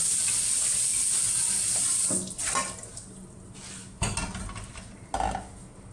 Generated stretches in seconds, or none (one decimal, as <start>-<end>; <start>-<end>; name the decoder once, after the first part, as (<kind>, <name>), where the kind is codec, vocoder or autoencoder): none